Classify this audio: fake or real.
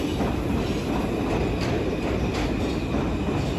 real